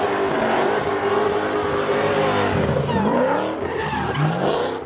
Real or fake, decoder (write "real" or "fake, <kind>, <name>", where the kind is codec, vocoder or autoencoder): real